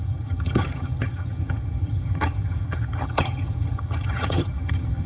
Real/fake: fake